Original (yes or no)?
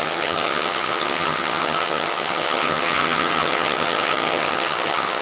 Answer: no